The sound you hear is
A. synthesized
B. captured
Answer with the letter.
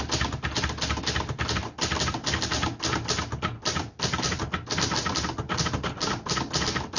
B